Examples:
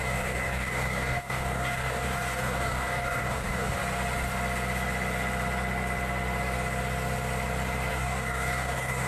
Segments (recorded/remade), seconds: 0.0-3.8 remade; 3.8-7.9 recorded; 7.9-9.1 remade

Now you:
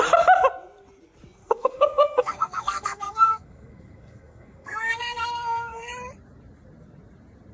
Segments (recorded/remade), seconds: 0.0-1.4 recorded; 1.4-5.9 remade; 5.9-7.5 recorded

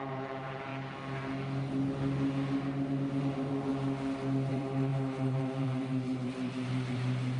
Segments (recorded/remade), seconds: 0.0-0.7 remade; 0.7-3.2 recorded; 3.2-3.7 remade; 3.7-4.5 recorded; 4.5-7.4 remade

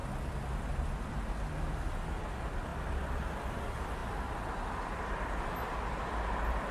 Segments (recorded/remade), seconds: 0.0-1.1 remade; 1.1-6.7 recorded

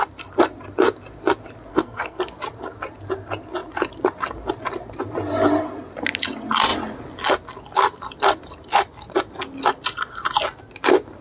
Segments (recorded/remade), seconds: 0.0-1.7 recorded; 1.7-2.2 remade; 2.2-11.2 recorded

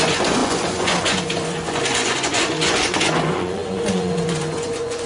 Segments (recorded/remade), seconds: 0.0-5.1 remade

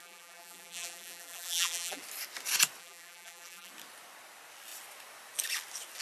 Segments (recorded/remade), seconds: 0.0-2.0 remade; 2.0-2.8 recorded; 2.8-3.7 remade; 3.7-6.0 recorded

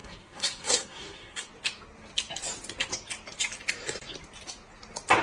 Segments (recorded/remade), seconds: 0.0-1.5 remade; 1.5-5.2 recorded